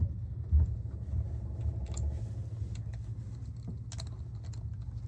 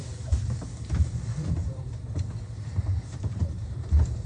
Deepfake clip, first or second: second